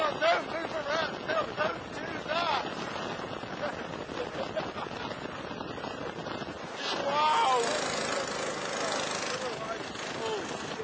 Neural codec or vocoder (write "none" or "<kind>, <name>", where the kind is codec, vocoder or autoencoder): none